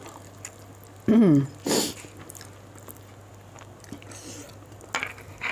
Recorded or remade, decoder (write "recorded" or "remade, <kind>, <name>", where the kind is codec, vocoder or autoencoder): recorded